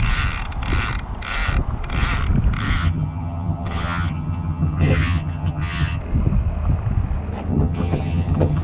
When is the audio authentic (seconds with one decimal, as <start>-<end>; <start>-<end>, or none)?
0.0-2.8; 6.0-7.5